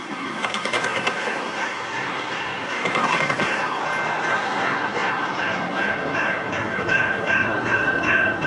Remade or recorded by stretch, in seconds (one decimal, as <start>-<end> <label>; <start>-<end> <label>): 0.0-3.8 remade; 3.8-4.3 recorded; 4.3-8.5 remade